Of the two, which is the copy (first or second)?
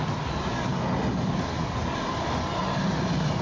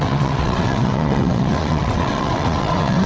second